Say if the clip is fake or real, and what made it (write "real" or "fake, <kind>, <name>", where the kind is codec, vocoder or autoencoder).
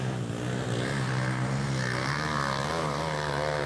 real